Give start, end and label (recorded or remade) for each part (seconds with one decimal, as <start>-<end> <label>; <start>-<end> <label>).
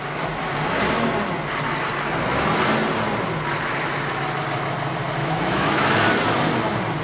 0.0-5.2 recorded; 5.2-6.0 remade; 6.0-7.0 recorded